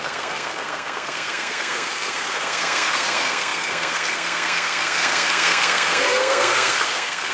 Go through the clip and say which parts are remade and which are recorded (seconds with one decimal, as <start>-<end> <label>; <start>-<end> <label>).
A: 0.0-7.3 remade